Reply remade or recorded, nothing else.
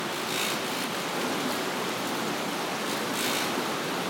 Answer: recorded